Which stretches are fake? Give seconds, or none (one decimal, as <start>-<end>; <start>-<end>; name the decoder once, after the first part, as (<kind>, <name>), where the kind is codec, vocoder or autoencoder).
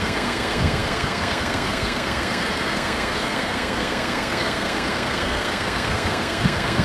0.0-6.8 (codec, SNAC)